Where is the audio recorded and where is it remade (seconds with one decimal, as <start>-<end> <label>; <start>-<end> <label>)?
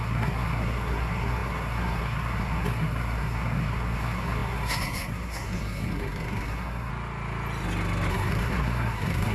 0.0-6.9 remade; 6.9-8.1 recorded; 8.1-9.3 remade